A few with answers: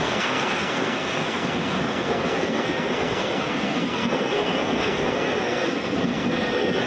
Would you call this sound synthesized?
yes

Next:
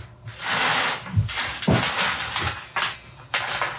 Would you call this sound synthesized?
no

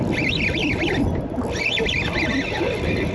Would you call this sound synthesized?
no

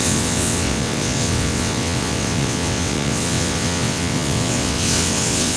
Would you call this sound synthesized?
yes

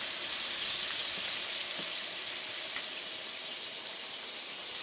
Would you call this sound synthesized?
yes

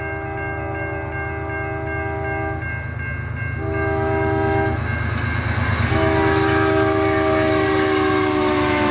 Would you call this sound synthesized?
no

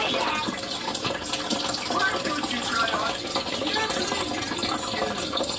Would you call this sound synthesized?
no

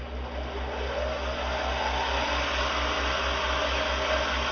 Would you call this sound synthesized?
no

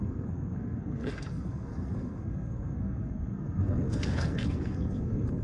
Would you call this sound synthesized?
yes